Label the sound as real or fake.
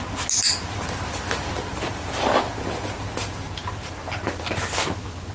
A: fake